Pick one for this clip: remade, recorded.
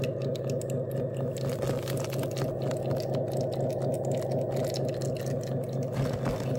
recorded